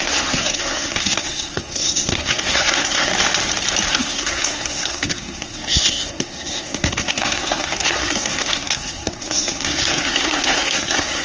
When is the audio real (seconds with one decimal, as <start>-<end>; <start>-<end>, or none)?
3.1-3.9